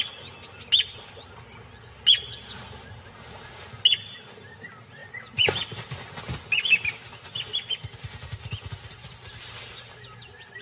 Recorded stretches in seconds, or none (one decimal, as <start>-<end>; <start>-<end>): 0.0-10.6